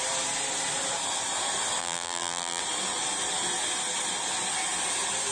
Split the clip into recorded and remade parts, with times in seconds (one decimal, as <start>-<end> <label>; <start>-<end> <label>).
0.0-1.8 recorded; 1.8-2.6 remade; 2.6-5.3 recorded